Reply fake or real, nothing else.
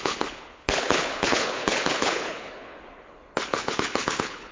fake